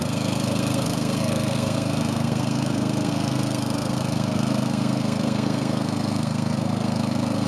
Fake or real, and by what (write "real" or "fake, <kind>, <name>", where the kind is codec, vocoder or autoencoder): fake, codec, SNAC